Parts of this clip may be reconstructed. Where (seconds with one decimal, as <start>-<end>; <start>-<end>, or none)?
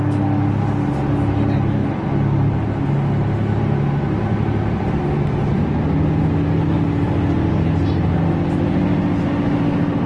none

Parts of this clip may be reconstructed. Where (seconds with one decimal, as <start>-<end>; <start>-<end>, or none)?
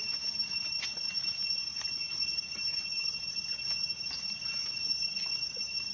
0.0-5.9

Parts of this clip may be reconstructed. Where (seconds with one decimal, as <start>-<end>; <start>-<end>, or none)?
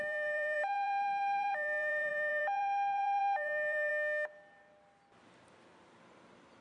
0.0-3.9; 6.0-6.6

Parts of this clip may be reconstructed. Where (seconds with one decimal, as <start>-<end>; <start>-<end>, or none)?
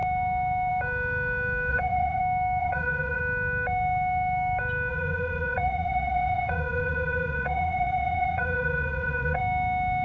1.7-2.2; 2.6-3.2; 4.9-9.4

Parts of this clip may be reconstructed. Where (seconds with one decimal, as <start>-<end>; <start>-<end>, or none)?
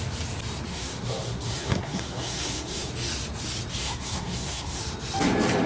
0.7-2.9; 3.7-4.8